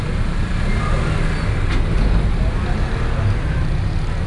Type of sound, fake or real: real